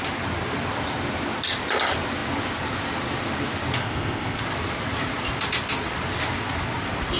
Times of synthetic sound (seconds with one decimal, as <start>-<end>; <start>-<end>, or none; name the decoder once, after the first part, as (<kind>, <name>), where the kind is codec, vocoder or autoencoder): 3.8-4.4 (codec, ZipCodec)